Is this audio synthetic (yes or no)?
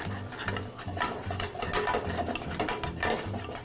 no